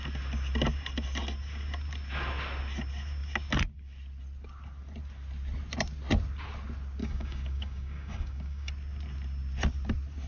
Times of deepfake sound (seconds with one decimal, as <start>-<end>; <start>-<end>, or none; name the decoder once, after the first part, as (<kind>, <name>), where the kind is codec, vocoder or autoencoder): 7.0-8.7 (codec, DAC)